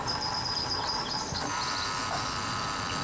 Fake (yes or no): no